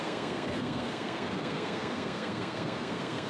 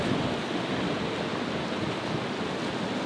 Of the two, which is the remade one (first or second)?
first